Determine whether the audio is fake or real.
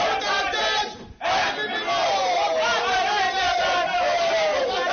real